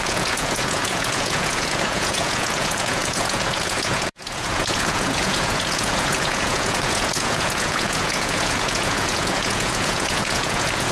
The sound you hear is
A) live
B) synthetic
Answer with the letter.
B